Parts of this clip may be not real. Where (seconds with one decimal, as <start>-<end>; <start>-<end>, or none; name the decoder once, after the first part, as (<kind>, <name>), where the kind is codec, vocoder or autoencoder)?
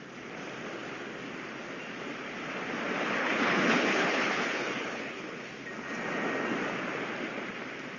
3.2-5.4 (codec, HILCodec)